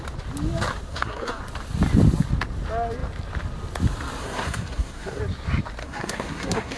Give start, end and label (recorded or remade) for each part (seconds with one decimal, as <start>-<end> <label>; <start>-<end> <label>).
0.0-0.9 recorded; 0.9-1.4 remade; 1.4-4.2 recorded; 4.2-5.2 remade; 5.2-5.8 recorded; 5.8-6.8 remade